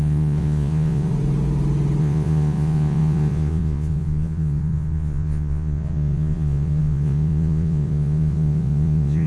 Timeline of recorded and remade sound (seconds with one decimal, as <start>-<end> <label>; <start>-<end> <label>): 0.0-1.1 remade; 1.1-2.0 recorded; 2.0-9.3 remade